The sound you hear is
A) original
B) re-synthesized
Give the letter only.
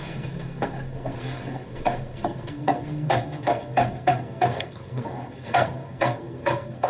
B